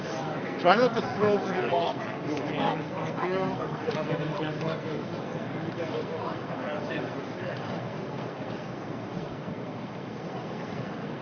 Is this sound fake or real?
fake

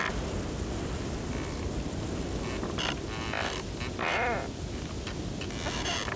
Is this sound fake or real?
real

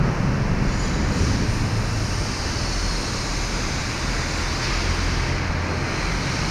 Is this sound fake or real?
real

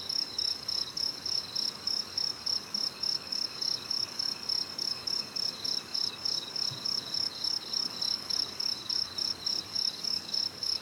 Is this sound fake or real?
fake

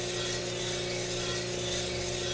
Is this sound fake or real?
real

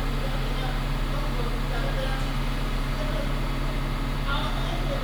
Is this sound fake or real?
real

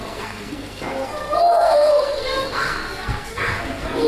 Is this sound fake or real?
fake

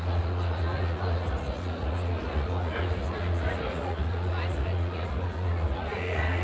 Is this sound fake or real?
fake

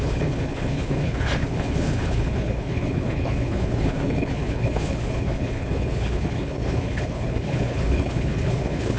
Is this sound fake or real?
fake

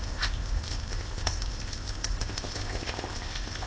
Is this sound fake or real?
fake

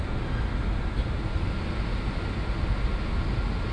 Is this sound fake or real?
real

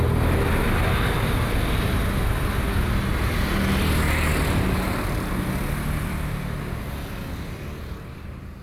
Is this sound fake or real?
real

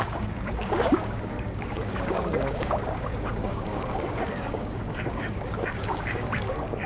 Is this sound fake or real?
fake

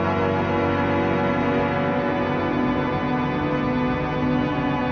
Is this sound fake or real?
real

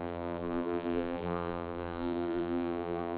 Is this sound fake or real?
fake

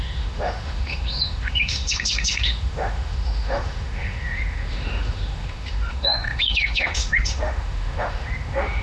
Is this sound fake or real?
fake